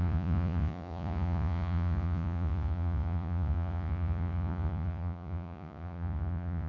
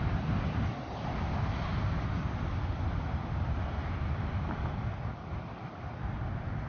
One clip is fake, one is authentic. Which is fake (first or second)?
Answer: first